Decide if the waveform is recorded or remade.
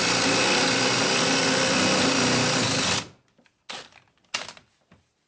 recorded